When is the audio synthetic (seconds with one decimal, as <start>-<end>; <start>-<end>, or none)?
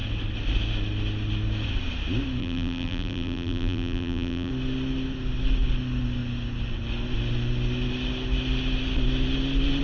2.4-4.5